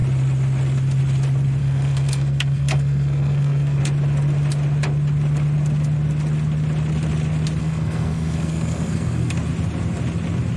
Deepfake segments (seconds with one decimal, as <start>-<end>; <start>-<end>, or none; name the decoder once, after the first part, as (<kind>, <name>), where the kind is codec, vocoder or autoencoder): 1.6-3.8 (codec, SNAC); 7.6-9.3